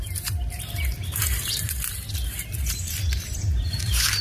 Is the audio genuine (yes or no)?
no